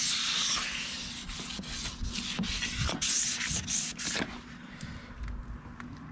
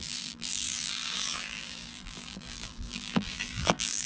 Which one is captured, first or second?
first